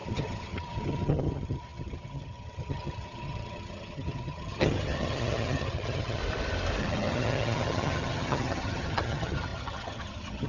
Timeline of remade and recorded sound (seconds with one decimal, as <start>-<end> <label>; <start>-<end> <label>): 0.0-6.2 remade; 6.2-6.8 recorded; 6.8-10.5 remade